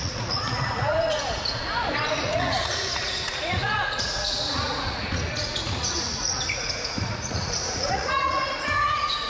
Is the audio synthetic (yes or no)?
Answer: yes